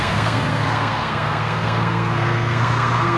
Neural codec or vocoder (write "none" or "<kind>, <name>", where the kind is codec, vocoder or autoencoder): codec, SNAC